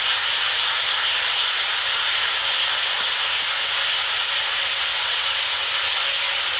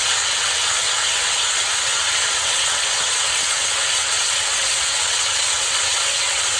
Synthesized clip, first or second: second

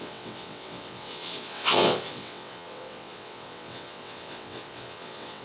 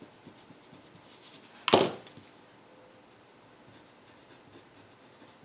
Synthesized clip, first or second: first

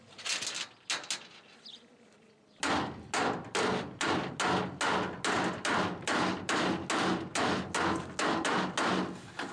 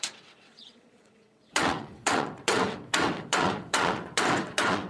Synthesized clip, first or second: second